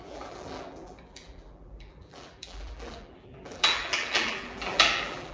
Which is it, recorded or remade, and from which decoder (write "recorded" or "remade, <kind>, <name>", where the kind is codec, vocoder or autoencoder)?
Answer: remade, vocoder, BigVGAN v2